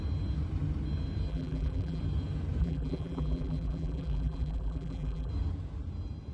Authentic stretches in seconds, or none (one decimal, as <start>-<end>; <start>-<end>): 0.0-1.3; 2.0-2.6; 5.3-6.3